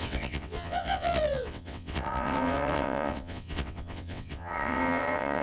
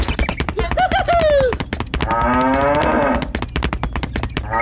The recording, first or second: second